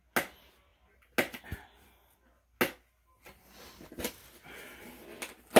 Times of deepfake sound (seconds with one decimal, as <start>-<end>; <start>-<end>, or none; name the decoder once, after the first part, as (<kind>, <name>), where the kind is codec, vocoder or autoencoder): none